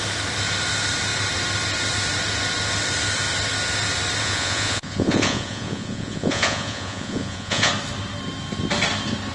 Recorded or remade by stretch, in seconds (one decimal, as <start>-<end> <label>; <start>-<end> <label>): 0.0-4.2 recorded; 4.2-7.7 remade; 7.7-9.3 recorded